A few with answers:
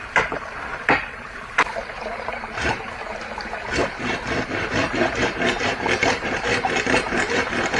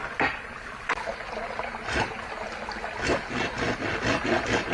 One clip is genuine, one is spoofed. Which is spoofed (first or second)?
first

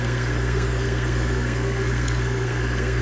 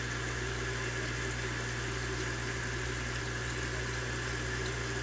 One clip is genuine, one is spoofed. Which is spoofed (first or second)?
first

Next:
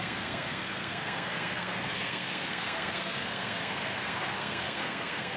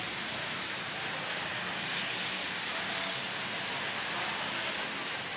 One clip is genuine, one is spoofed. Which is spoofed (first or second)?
first